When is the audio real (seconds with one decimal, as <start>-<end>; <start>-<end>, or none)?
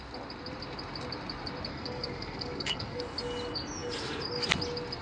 0.0-1.7; 3.0-5.0